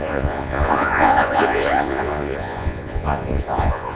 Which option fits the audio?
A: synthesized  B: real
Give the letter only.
A